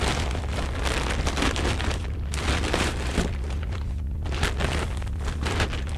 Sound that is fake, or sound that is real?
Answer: real